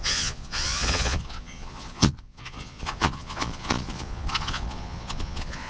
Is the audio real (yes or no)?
no